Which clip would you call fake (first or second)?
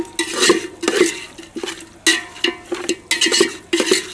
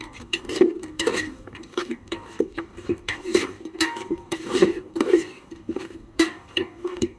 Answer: second